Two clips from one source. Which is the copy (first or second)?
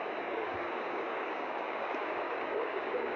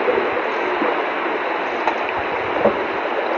first